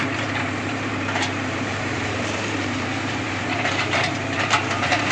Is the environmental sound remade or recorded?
remade